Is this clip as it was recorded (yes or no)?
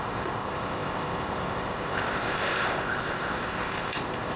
no